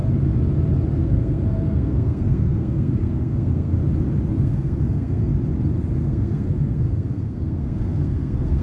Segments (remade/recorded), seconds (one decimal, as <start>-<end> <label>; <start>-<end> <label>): 0.0-0.9 recorded; 0.9-3.7 remade; 3.7-4.4 recorded; 4.4-5.3 remade; 5.3-5.9 recorded; 5.9-8.6 remade